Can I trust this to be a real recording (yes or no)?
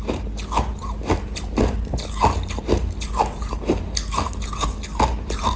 yes